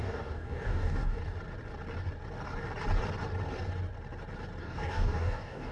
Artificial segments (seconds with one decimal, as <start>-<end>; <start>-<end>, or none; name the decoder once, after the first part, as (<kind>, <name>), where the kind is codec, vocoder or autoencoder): 0.0-1.2 (codec, DAC); 4.6-5.7